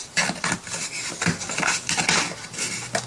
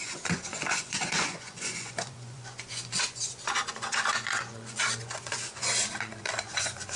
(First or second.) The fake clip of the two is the second